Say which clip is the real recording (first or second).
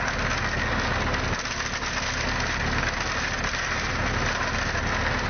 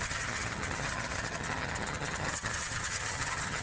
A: first